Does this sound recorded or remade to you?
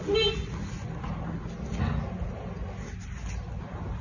recorded